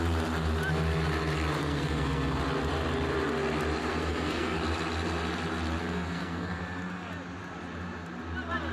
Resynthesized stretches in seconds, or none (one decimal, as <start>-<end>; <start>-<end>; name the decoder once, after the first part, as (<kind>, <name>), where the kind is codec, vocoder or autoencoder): 1.6-2.4 (codec, SNAC); 3.8-4.6; 5.8-6.6